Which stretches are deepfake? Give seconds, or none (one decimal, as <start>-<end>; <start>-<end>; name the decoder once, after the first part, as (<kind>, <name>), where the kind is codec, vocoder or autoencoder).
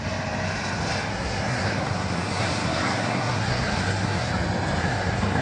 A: 1.1-4.3 (codec, SNAC); 4.8-5.4